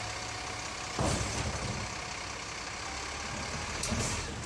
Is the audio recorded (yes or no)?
yes